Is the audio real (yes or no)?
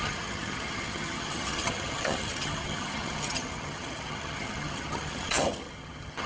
no